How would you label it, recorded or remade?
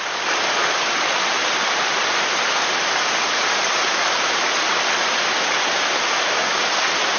recorded